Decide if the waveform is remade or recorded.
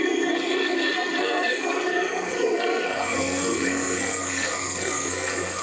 remade